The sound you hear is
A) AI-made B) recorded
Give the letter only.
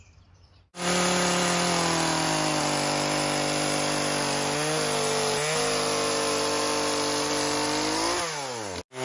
B